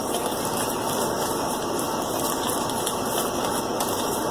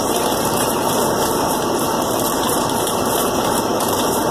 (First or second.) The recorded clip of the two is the first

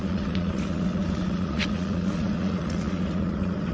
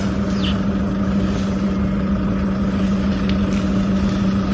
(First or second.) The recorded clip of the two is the second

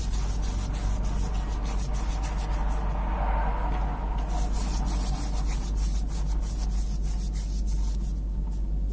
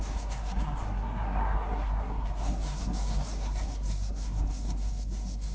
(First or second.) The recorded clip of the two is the first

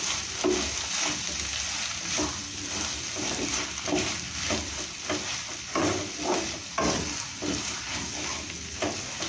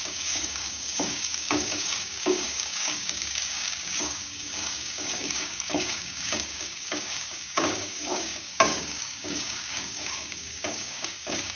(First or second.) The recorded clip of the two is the first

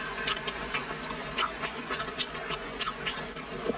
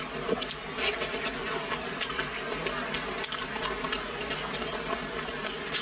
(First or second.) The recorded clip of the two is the second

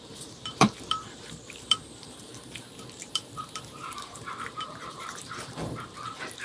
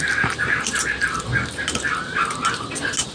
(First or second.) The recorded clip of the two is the second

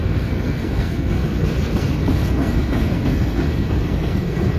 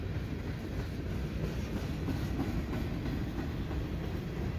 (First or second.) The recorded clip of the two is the second